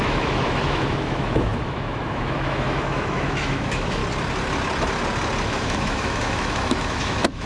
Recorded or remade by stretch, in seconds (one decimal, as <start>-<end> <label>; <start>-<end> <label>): 0.0-4.0 remade; 4.0-5.5 recorded; 5.5-7.5 remade